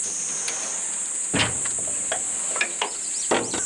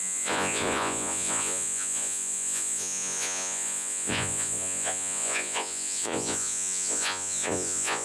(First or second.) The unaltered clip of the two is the first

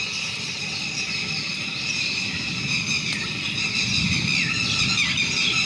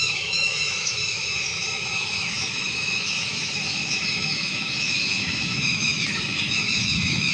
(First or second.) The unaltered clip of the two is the first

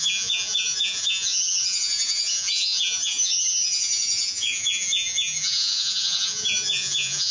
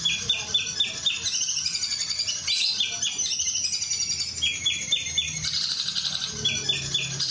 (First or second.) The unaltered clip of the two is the second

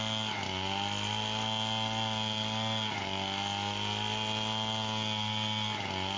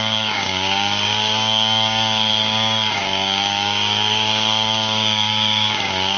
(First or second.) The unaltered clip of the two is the first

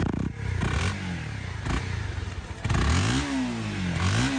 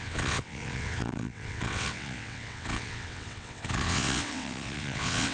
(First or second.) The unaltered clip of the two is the first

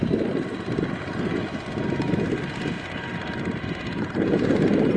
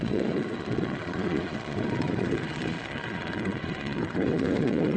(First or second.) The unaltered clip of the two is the first